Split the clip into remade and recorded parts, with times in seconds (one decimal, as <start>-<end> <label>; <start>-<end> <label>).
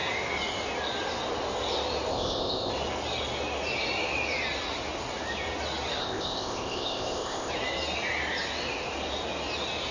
0.0-2.1 recorded; 2.1-2.7 remade; 2.7-6.0 recorded; 6.0-7.5 remade; 7.5-9.9 recorded